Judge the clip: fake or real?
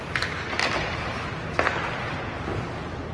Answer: real